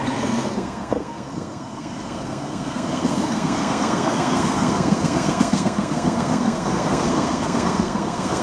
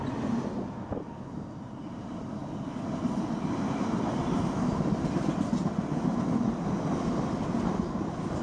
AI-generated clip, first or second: first